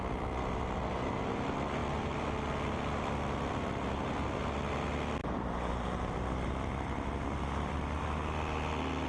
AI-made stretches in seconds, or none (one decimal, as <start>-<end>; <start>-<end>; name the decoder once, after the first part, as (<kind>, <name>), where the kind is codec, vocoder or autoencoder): 5.2-8.0 (vocoder, BigVGAN v2)